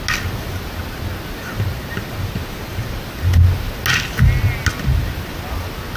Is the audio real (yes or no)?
yes